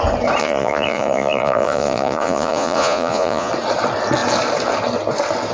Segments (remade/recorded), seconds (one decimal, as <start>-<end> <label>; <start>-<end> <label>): 0.0-0.4 recorded; 0.4-3.5 remade; 3.5-5.5 recorded